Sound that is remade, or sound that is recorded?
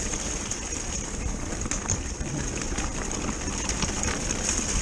remade